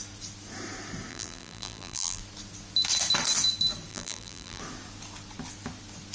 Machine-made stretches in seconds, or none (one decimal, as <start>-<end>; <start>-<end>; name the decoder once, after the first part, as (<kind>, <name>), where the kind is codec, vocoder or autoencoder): 1.1-2.2 (vocoder, BigVGAN v2); 3.9-4.6